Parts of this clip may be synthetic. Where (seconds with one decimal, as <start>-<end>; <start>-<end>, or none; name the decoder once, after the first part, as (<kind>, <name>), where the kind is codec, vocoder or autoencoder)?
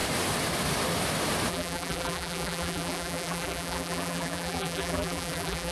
1.5-5.7 (vocoder, BigVGAN v2)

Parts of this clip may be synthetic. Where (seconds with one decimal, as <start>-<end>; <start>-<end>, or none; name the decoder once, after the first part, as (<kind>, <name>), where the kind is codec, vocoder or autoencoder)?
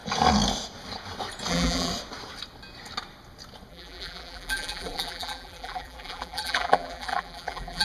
1.5-1.9 (vocoder, BigVGAN v2); 3.7-7.8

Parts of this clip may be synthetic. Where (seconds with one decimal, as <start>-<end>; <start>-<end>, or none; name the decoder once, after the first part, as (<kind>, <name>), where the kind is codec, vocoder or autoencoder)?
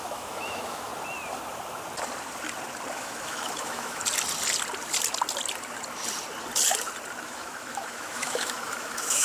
0.0-0.9 (autoencoder, DAC-VAE); 2.9-4.0; 7.2-9.2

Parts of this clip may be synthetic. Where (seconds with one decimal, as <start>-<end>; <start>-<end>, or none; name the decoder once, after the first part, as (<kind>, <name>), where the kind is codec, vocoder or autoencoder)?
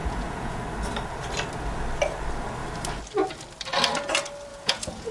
0.0-0.6 (vocoder, Vocos); 4.5-5.1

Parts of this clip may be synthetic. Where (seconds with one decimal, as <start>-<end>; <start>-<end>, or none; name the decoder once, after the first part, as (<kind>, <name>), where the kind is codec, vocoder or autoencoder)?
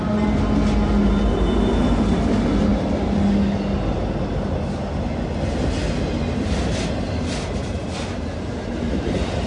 none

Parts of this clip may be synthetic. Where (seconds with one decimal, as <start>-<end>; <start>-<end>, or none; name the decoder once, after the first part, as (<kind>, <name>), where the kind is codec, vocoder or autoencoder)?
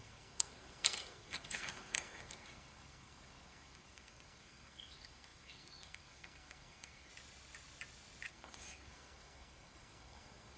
0.0-7.1 (codec, SNAC); 8.3-10.6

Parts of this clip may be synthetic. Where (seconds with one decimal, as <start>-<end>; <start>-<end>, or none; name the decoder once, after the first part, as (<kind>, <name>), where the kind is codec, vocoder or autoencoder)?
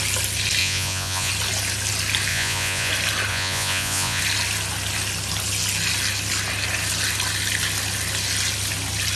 0.6-1.3 (vocoder, Vocos); 2.3-2.9; 3.3-4.2